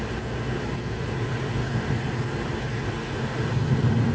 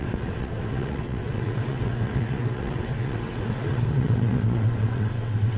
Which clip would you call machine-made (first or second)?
second